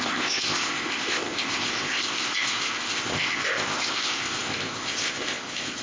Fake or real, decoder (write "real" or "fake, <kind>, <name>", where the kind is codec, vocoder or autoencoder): fake, codec, ZipCodec